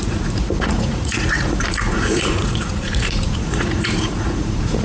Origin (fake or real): fake